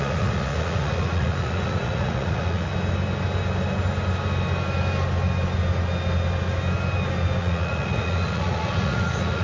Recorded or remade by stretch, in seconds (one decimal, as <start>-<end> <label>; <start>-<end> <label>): 0.0-2.7 remade; 2.7-7.4 recorded; 7.4-9.4 remade